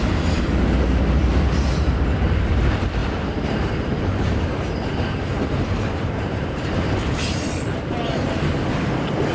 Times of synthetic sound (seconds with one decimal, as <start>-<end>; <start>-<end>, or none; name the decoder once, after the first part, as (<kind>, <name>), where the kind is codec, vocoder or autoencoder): 3.0-8.3 (vocoder, BigVGAN v2)